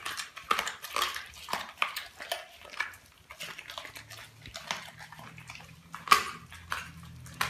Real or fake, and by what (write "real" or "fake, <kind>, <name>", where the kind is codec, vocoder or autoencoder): real